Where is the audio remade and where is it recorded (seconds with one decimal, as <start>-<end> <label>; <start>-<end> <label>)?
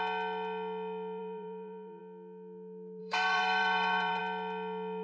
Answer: 0.0-1.2 recorded; 1.2-2.0 remade; 2.0-3.0 recorded; 3.0-4.2 remade; 4.2-5.0 recorded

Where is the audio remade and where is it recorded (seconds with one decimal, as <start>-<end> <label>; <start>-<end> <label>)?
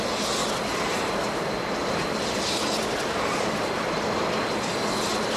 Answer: 0.0-5.4 recorded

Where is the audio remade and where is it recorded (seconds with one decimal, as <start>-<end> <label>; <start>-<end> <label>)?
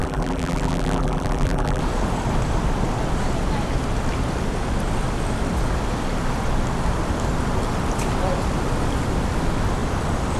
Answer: 0.0-1.8 remade; 1.8-10.4 recorded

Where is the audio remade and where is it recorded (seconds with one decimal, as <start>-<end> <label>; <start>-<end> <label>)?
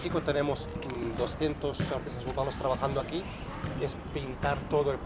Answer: 0.0-5.1 remade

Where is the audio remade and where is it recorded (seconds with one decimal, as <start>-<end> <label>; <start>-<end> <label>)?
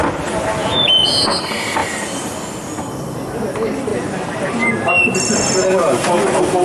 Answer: 0.0-0.6 recorded; 0.6-1.1 remade; 1.1-6.6 recorded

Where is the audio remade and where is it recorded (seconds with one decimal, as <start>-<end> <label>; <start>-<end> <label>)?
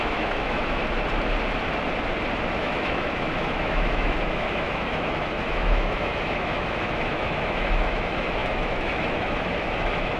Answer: 0.0-0.8 remade; 0.8-2.6 recorded; 2.6-10.2 remade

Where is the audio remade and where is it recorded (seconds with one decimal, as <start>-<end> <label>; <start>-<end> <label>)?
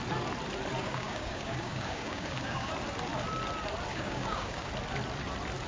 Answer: 0.0-0.8 recorded; 0.8-2.7 remade; 2.7-3.9 recorded; 3.9-4.7 remade; 4.7-5.7 recorded